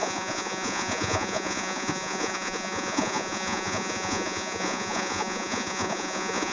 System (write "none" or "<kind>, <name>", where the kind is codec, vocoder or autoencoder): vocoder, Vocos